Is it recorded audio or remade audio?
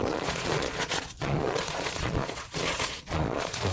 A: remade